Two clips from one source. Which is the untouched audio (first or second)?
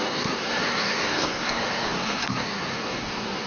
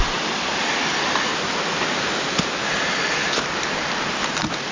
second